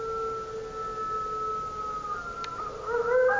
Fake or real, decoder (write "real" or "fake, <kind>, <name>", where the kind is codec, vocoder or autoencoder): real